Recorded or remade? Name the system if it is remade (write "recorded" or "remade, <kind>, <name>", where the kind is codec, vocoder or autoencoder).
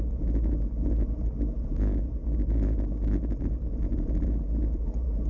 recorded